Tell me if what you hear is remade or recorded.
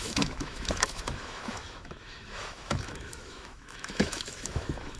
remade